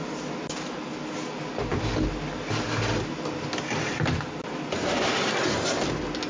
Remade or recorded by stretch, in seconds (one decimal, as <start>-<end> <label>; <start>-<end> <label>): 0.0-6.3 recorded